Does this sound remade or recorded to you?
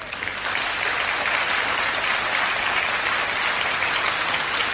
recorded